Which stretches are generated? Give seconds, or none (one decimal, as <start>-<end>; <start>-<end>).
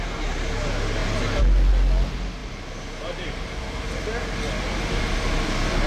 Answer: none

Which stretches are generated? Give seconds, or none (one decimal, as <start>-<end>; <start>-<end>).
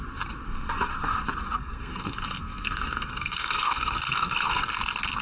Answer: 1.6-4.7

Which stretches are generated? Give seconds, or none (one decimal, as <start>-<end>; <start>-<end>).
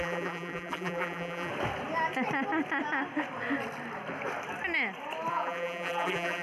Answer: 0.0-1.5; 5.3-6.4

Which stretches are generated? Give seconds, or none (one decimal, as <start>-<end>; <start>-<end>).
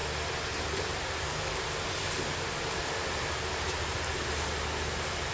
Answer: none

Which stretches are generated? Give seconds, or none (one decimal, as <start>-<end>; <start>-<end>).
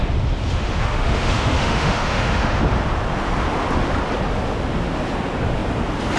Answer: 0.5-2.6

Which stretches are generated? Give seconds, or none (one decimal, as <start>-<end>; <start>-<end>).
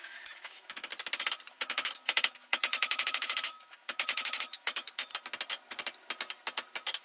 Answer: 0.0-0.9; 1.5-5.1